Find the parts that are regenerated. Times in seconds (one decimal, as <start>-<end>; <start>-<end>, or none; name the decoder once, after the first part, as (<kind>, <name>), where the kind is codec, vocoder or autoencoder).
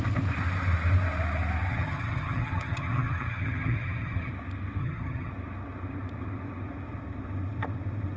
1.7-4.3 (vocoder, HiFi-GAN); 4.8-5.3